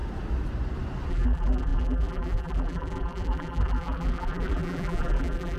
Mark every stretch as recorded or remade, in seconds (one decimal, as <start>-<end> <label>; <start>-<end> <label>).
0.0-1.1 recorded; 1.1-5.6 remade